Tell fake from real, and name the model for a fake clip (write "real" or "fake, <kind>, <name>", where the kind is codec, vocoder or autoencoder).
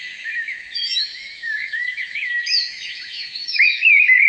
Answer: fake, autoencoder, DAC-VAE